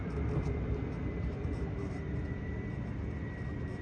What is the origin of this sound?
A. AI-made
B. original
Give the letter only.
A